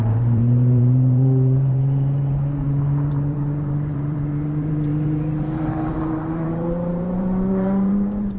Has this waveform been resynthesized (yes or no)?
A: yes